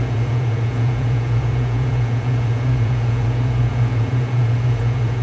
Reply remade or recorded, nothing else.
remade